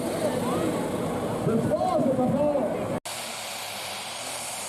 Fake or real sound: real